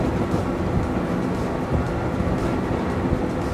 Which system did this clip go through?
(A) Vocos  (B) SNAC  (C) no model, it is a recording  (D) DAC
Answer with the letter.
C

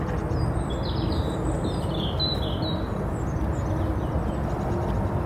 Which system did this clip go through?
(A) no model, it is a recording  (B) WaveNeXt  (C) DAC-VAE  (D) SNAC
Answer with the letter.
A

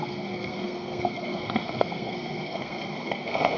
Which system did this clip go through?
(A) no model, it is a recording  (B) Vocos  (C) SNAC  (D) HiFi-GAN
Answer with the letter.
C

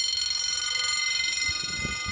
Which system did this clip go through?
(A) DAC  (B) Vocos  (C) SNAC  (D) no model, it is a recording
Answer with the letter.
D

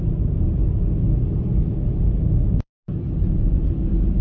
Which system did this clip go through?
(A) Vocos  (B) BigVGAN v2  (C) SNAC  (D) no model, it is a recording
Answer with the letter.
D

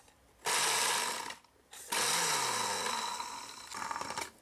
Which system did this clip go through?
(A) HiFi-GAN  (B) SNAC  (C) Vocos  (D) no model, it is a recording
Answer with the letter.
D